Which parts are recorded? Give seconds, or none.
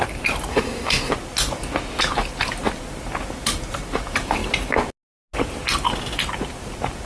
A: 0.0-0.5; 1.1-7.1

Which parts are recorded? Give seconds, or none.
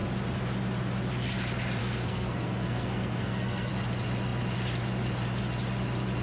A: 0.0-1.8; 3.7-6.2